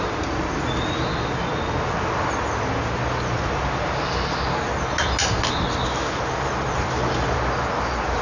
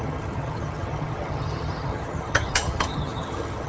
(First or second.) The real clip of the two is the first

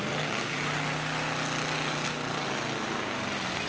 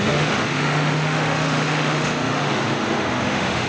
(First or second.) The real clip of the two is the first